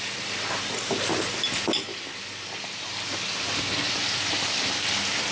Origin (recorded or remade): recorded